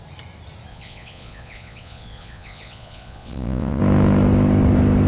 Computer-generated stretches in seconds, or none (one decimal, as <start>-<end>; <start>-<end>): 0.7-3.8